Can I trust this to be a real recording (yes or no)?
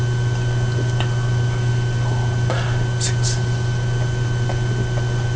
yes